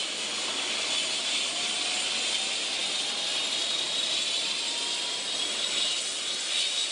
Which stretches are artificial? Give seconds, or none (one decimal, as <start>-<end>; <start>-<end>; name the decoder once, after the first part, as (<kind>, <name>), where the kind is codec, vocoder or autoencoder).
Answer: none